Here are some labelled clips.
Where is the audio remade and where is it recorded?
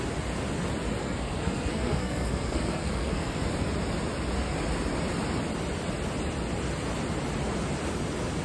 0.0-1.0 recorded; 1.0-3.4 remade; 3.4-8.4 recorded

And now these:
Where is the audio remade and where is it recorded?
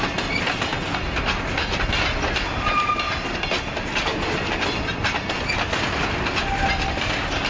0.0-7.5 recorded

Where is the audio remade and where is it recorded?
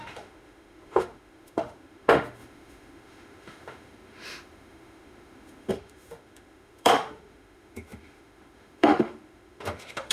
0.0-10.1 remade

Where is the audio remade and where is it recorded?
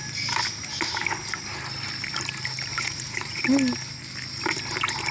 0.0-2.7 recorded; 2.7-3.4 remade; 3.4-5.1 recorded